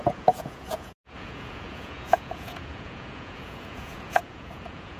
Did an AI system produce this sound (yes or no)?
yes